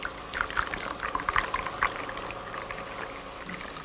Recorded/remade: recorded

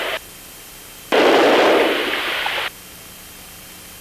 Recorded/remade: recorded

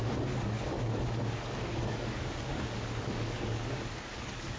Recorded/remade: remade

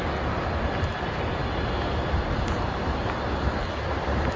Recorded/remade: recorded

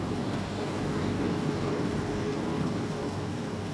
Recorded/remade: remade